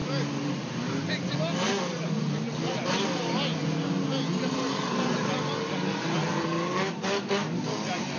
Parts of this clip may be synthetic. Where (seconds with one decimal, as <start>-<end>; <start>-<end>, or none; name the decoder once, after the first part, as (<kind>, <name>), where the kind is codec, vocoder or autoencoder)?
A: none